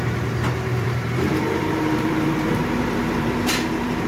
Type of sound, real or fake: fake